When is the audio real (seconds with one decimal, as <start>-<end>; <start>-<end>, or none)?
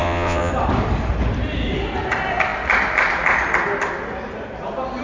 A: 0.5-5.0